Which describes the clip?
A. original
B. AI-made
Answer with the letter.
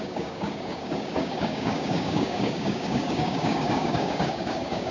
B